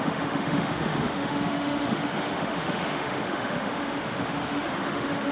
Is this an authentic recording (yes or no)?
no